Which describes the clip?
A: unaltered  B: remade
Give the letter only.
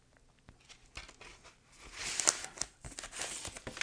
A